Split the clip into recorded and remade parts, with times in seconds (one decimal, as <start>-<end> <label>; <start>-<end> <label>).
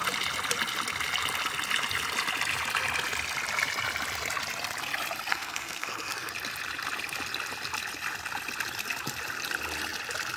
0.0-5.3 recorded; 5.3-6.3 remade; 6.3-10.4 recorded